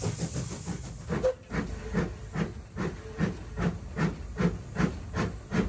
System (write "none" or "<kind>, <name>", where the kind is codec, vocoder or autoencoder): none